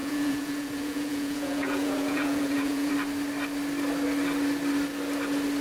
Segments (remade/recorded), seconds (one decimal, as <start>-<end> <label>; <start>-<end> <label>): 0.0-2.9 remade; 2.9-5.6 recorded